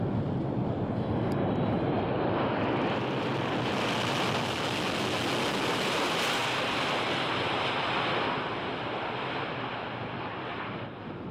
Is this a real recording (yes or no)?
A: yes